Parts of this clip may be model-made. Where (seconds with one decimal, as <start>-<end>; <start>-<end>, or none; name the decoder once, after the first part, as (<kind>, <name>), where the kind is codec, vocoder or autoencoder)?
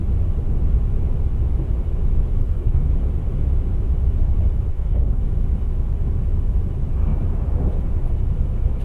2.4-2.9 (codec, DAC); 4.7-5.2